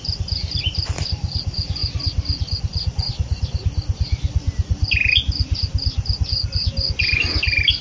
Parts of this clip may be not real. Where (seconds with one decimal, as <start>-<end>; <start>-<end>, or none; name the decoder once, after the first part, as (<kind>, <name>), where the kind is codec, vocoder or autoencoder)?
none